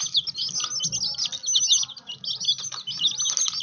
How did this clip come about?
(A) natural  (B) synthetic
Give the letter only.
A